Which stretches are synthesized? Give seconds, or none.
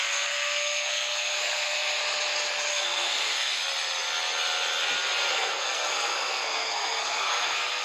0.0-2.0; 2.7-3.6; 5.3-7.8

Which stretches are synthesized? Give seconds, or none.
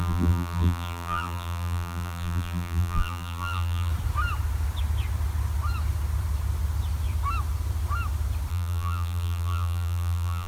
0.0-3.9; 8.5-10.5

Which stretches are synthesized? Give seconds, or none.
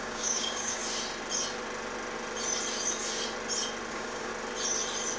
0.0-0.8; 3.9-4.3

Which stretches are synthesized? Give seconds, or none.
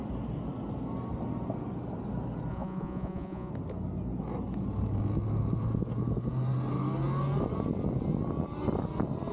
2.5-3.5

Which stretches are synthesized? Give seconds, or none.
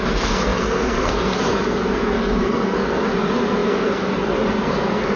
0.0-5.2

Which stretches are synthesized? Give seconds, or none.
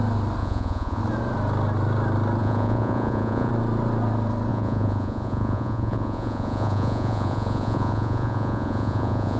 0.4-1.0; 2.4-3.5; 4.5-9.4